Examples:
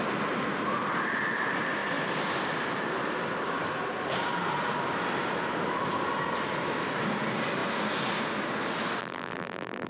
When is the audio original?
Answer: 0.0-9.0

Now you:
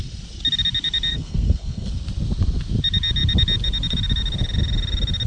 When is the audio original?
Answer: 0.0-1.1; 1.9-5.3